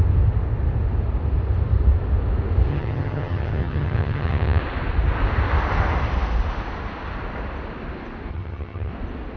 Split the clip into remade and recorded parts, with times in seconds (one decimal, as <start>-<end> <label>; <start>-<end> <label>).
0.0-2.7 recorded; 2.7-4.6 remade; 4.6-8.3 recorded; 8.3-8.9 remade; 8.9-9.4 recorded